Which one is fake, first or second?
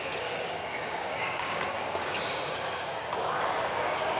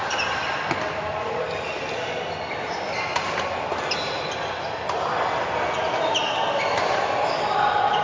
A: first